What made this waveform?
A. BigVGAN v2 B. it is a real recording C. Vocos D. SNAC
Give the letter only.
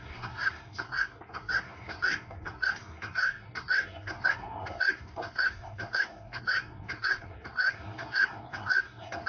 D